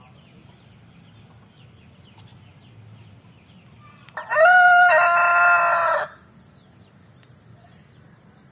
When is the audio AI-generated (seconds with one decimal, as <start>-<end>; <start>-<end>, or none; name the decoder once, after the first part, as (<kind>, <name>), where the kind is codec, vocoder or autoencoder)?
none